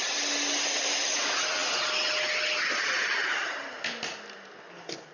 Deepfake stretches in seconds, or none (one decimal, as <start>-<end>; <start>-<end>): none

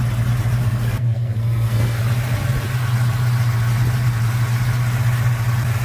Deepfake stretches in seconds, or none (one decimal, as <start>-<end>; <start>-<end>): 0.6-2.0

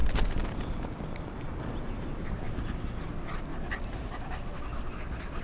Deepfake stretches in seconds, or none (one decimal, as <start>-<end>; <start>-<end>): 3.5-4.2

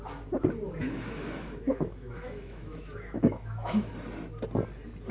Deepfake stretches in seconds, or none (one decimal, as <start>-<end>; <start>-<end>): 0.8-3.9

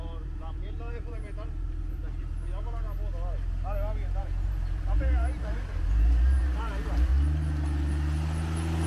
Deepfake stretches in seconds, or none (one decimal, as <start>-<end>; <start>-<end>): 0.0-2.0; 4.2-7.1